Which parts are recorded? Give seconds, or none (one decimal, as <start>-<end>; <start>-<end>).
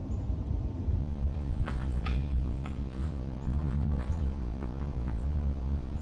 0.0-1.0